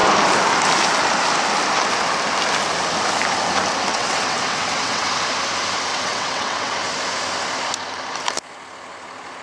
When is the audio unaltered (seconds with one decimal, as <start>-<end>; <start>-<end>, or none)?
0.0-3.9; 5.1-5.9; 6.8-9.4